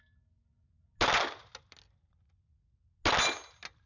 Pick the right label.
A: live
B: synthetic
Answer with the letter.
A